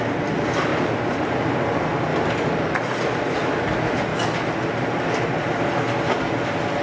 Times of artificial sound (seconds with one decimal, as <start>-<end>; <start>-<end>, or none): none